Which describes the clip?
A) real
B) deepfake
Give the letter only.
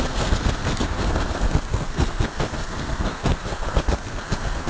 B